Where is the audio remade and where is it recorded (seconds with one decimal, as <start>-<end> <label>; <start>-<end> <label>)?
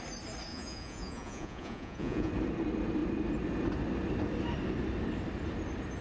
0.0-0.5 recorded; 0.5-2.3 remade; 2.3-6.0 recorded